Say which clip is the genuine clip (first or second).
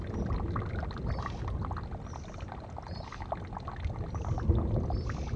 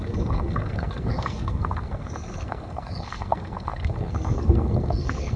first